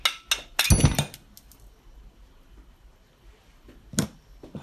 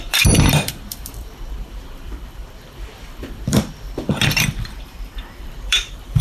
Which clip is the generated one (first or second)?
second